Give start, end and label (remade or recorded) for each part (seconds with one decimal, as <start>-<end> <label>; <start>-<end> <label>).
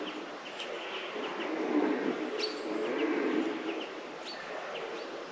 0.0-5.3 recorded